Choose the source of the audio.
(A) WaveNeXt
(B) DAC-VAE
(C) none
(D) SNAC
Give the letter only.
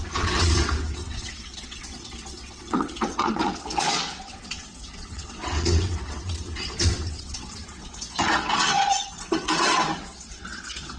A